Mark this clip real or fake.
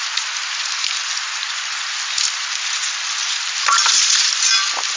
real